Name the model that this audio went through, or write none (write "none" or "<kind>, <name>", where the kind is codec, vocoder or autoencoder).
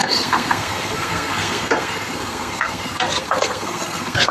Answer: codec, SNAC